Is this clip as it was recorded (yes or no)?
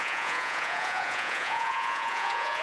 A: no